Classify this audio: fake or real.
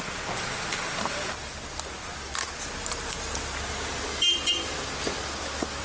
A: real